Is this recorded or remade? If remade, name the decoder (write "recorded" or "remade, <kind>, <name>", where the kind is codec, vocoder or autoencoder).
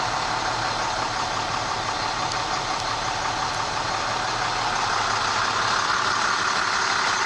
recorded